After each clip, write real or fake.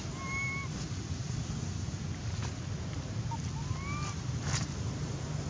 real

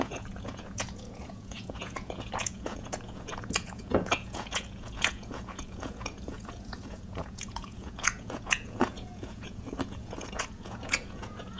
fake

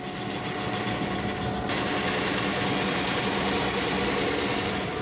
real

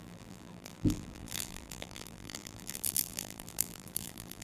fake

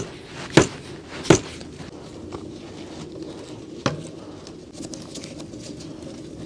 real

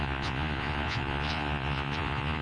fake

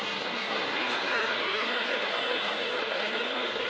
fake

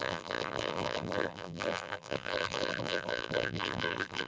fake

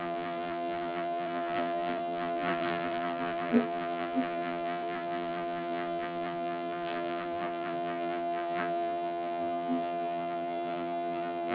fake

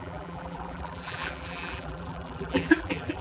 fake